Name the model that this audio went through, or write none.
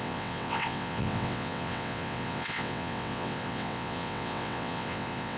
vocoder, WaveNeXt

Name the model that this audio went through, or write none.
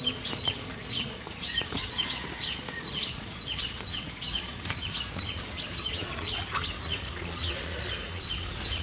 vocoder, Vocos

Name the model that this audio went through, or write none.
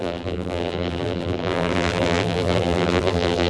vocoder, BigVGAN v2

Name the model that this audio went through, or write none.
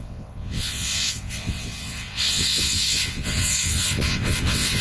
vocoder, WaveNeXt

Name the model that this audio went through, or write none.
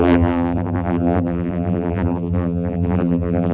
vocoder, BigVGAN v2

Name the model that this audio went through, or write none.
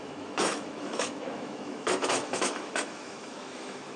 autoencoder, DAC-VAE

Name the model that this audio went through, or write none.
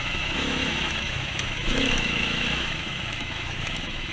autoencoder, DAC-VAE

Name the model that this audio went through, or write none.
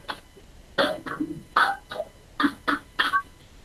none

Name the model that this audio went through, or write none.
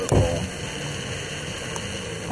none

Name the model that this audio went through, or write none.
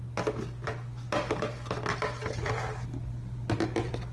none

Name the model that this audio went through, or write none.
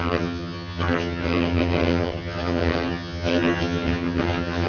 vocoder, HiFi-GAN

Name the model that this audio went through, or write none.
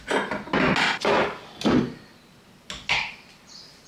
none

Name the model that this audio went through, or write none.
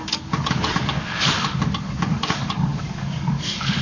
codec, DAC